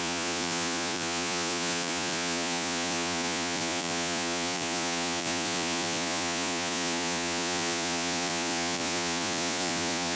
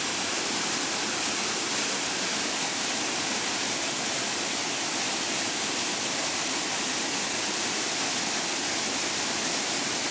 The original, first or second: second